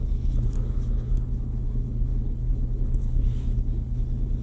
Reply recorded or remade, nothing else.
remade